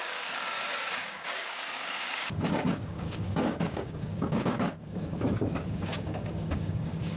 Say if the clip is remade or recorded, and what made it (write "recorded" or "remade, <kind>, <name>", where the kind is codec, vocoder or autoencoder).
remade, codec, DAC